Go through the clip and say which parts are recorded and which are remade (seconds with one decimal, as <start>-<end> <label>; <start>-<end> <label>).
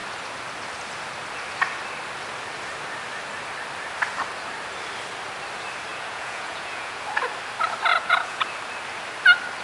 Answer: 0.0-5.9 recorded; 5.9-7.0 remade; 7.0-7.9 recorded; 7.9-8.4 remade; 8.4-9.6 recorded